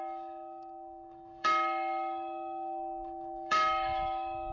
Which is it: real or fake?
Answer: fake